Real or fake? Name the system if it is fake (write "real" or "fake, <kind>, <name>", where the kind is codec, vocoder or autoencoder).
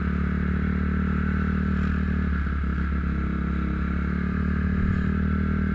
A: real